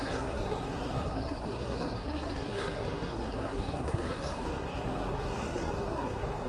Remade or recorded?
remade